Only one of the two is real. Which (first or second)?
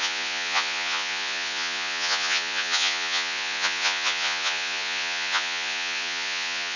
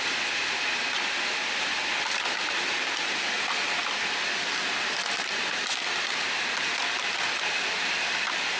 second